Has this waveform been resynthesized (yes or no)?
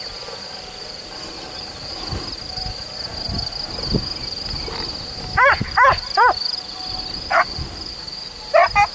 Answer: no